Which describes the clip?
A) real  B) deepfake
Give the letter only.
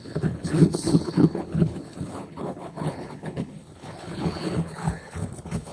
B